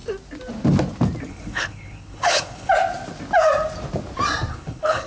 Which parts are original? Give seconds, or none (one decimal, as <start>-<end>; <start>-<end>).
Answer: 0.0-1.3; 2.7-4.5